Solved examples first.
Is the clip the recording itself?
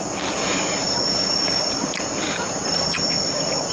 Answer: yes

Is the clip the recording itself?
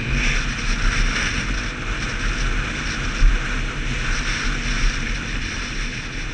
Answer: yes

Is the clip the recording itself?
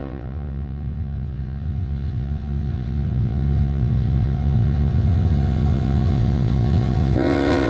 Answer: no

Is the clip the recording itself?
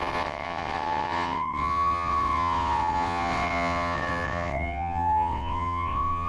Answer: no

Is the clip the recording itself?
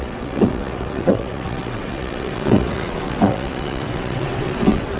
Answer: no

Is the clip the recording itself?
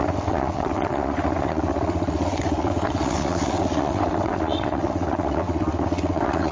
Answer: no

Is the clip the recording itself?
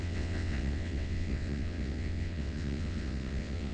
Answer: no